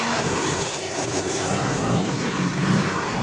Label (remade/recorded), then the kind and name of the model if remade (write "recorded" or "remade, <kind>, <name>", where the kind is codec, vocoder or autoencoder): remade, codec, SNAC